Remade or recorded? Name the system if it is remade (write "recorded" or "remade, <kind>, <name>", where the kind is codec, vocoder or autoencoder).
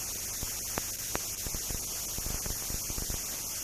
recorded